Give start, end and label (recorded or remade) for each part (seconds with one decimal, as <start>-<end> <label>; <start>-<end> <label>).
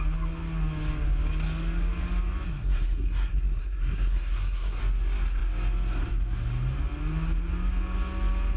0.0-2.5 recorded; 2.5-4.8 remade; 4.8-8.6 recorded